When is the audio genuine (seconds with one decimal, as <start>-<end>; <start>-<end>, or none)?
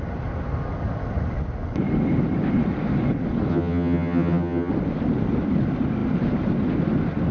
0.0-3.5; 4.7-7.3